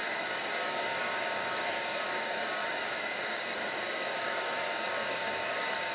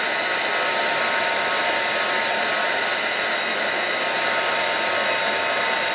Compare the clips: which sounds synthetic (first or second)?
first